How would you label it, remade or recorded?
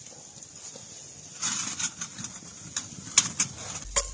recorded